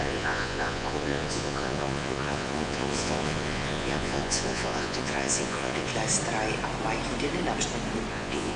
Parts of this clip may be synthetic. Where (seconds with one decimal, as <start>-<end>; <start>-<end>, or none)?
0.0-5.9; 8.1-8.6